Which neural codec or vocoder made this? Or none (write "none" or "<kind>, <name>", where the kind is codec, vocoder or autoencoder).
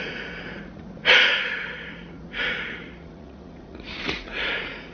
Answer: vocoder, Vocos